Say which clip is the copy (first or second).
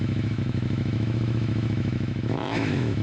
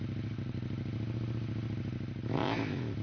first